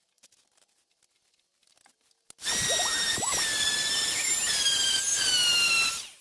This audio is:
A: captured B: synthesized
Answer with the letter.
A